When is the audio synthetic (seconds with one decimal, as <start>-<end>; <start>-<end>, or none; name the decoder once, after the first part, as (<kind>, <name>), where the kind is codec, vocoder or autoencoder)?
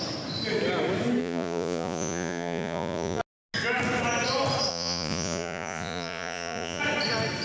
1.2-3.2 (vocoder, Vocos); 4.7-6.8